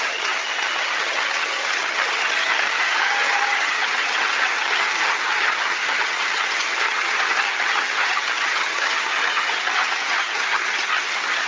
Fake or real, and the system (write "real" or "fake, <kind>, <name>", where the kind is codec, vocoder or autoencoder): fake, vocoder, HiFi-GAN